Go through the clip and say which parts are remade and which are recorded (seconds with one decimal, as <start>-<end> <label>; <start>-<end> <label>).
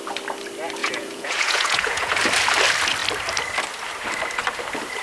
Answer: 0.0-0.8 recorded; 0.8-2.1 remade; 2.1-5.0 recorded